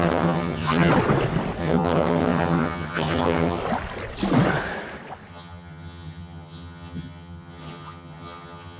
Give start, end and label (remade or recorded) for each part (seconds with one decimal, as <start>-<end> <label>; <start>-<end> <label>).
0.0-0.9 remade; 0.9-1.6 recorded; 1.6-3.6 remade; 3.6-5.3 recorded; 5.3-8.8 remade

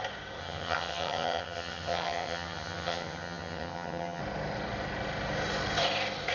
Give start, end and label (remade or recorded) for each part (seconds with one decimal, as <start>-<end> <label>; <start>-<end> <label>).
0.0-0.4 recorded; 0.4-4.2 remade; 4.2-6.3 recorded

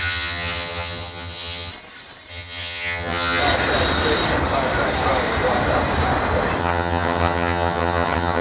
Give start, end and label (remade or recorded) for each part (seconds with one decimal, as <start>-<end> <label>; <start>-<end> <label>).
0.0-1.7 remade; 1.7-2.3 recorded; 2.3-3.4 remade; 3.4-6.6 recorded; 6.6-8.4 remade

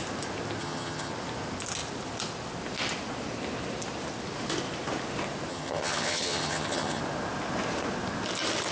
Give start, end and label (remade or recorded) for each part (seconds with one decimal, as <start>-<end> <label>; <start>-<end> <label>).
0.0-0.6 recorded; 0.6-1.1 remade; 1.1-5.5 recorded; 5.5-7.0 remade; 7.0-8.7 recorded

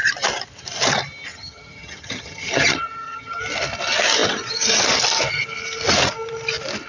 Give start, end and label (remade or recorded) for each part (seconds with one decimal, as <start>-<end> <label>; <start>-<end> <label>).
0.0-1.3 recorded; 1.3-3.4 remade; 3.4-6.9 recorded

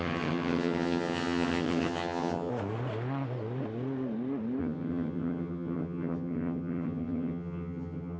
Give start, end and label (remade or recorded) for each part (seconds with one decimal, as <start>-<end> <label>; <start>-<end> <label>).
0.0-2.5 remade; 2.5-4.6 recorded; 4.6-8.2 remade

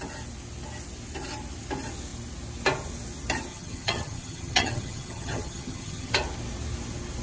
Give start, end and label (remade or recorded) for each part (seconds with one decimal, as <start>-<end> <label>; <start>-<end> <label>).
0.0-3.5 recorded; 3.5-6.1 remade; 6.1-7.2 recorded

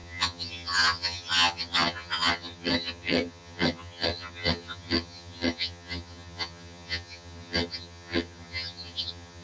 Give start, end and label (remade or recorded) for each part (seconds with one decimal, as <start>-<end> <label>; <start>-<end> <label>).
0.0-9.4 remade